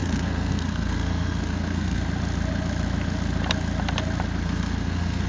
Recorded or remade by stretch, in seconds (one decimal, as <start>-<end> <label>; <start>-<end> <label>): 0.0-2.0 remade; 2.0-4.4 recorded; 4.4-5.3 remade